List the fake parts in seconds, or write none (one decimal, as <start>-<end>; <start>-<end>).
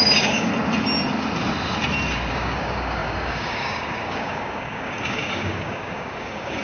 0.0-0.5; 2.3-6.6